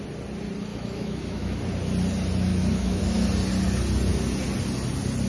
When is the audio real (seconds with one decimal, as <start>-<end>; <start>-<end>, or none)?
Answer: 0.0-0.7; 1.6-2.5; 3.0-5.3